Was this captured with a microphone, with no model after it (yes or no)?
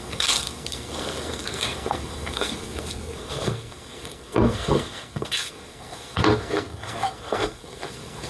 no